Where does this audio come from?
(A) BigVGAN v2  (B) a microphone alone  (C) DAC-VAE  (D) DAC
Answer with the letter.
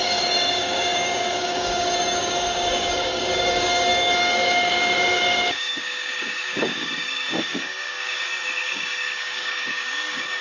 D